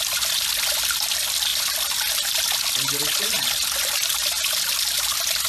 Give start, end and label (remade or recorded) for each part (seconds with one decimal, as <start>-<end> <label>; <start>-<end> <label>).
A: 0.0-5.5 recorded